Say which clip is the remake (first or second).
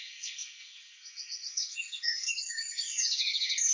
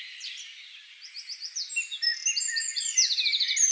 first